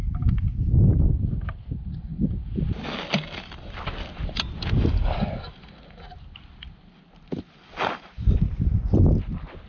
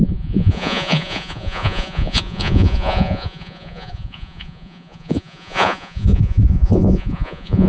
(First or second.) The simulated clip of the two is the second